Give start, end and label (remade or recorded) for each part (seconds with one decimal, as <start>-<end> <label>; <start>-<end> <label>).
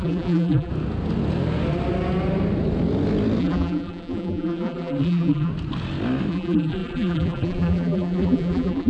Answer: 0.0-0.7 remade; 0.7-3.4 recorded; 3.4-5.5 remade; 5.5-6.3 recorded; 6.3-8.9 remade